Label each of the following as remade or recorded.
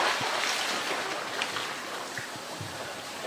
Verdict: recorded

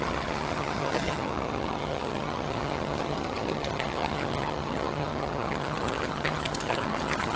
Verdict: remade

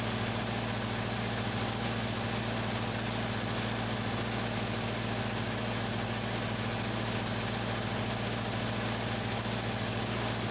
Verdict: recorded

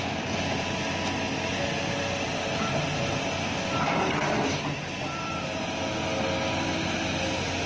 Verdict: recorded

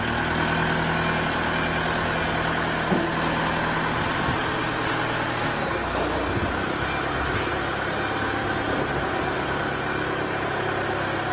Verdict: recorded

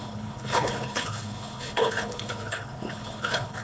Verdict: remade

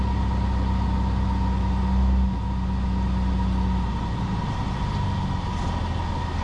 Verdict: recorded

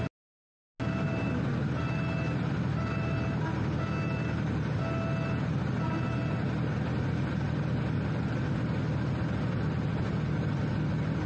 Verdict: recorded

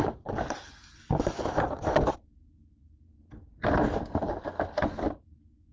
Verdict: recorded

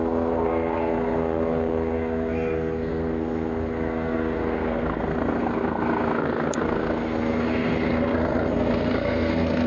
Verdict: remade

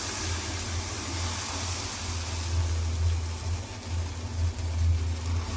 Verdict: recorded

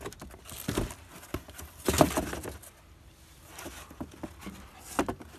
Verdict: recorded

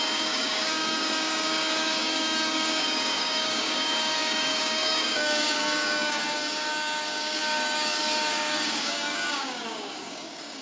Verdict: remade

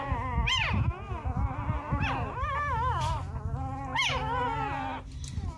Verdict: recorded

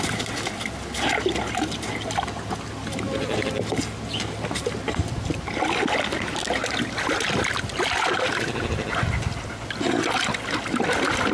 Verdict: recorded